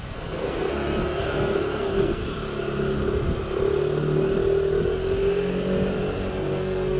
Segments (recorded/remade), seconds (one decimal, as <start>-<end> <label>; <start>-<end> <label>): 0.0-2.2 remade; 2.2-6.3 recorded; 6.3-7.0 remade